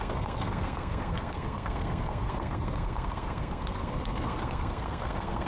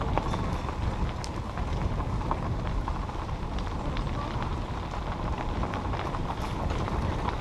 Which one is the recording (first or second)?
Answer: second